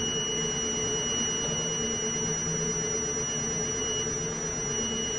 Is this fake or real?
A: real